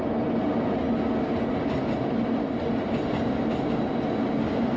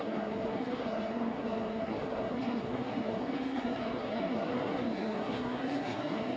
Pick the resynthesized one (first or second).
second